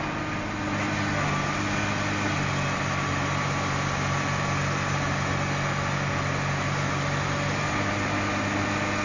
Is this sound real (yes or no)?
yes